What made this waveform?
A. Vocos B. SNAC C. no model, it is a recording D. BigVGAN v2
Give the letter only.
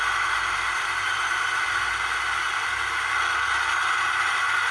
C